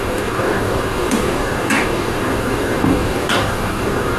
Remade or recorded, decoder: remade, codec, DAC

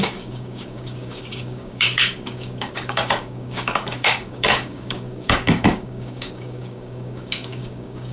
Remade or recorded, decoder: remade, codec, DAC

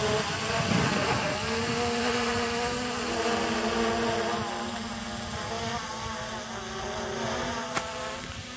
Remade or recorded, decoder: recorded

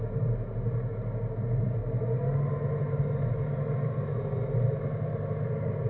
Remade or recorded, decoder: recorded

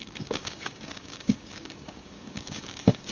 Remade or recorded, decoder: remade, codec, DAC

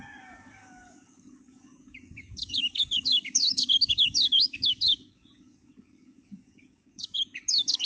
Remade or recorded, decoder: remade, codec, DAC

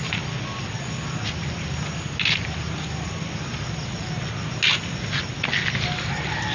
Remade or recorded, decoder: recorded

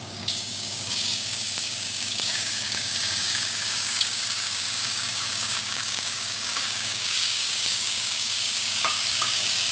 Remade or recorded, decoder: remade, codec, DAC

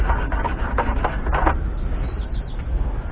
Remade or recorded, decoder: recorded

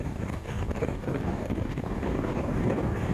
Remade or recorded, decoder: remade, codec, DAC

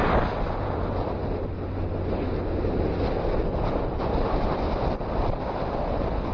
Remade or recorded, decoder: recorded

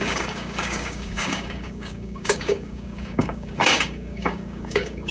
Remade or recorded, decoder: remade, codec, DAC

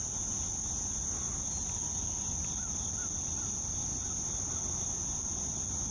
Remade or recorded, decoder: recorded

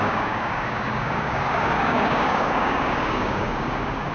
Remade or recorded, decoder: remade, codec, DAC